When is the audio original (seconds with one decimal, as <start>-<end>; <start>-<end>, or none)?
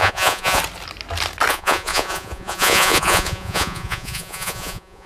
0.6-1.5